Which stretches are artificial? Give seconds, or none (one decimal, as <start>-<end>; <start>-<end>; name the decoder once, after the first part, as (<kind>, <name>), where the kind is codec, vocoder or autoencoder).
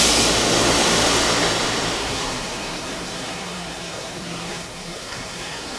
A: 2.0-5.8 (codec, SNAC)